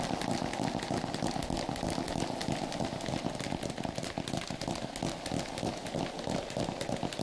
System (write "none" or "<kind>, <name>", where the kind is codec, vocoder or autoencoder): none